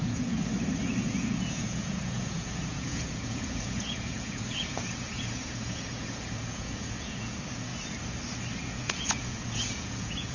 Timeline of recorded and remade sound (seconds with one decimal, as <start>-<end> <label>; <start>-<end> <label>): 0.0-0.5 remade; 0.5-1.1 recorded; 1.1-7.7 remade; 7.7-8.6 recorded; 8.6-10.3 remade